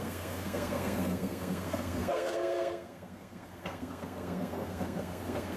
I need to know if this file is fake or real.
fake